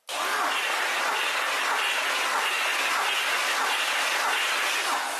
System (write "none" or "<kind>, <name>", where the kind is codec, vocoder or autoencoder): none